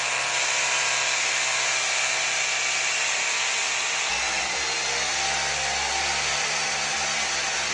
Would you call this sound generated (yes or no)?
no